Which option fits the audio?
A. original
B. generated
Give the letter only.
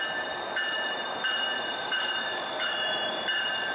B